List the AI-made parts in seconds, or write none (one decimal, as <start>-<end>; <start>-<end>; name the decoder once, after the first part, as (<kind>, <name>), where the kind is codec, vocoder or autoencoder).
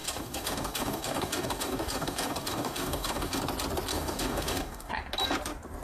0.0-3.4 (codec, DAC); 3.9-4.9